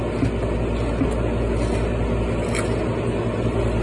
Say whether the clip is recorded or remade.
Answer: recorded